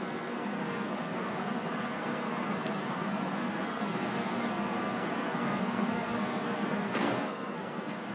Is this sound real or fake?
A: fake